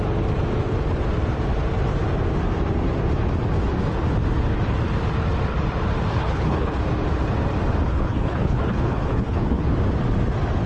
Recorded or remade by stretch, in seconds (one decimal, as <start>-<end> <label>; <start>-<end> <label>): 0.0-6.1 recorded; 6.1-6.8 remade; 6.8-7.9 recorded; 7.9-9.7 remade; 9.7-10.7 recorded